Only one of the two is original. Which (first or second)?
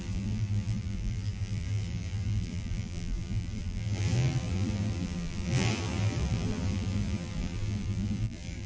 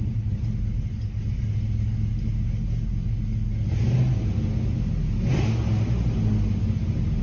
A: second